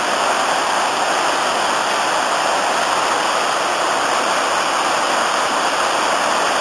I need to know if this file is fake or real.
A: real